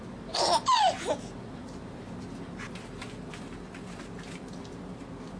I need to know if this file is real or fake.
real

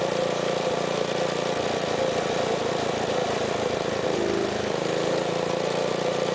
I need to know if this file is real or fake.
real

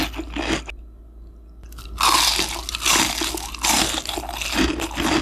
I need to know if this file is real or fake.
real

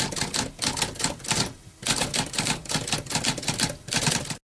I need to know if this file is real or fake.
real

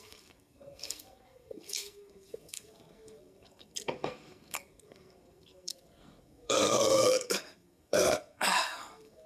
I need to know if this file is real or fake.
fake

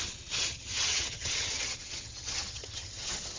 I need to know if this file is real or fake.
fake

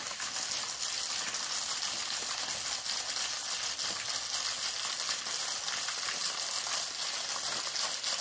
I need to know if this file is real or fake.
real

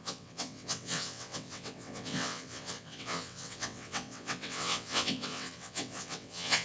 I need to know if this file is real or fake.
fake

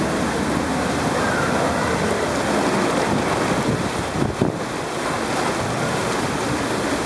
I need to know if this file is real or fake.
real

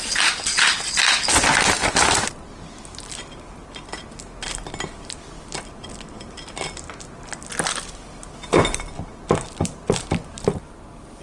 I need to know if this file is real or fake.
real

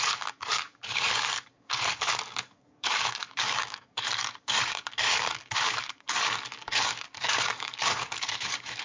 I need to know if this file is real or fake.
fake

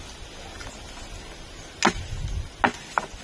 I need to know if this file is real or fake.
real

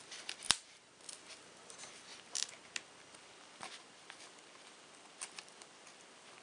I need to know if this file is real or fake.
real